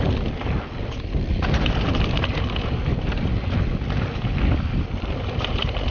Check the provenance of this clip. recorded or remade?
recorded